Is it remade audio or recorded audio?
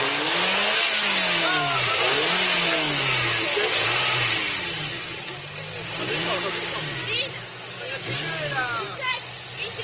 recorded